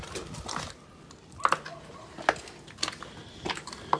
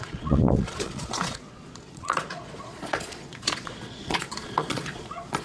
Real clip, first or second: first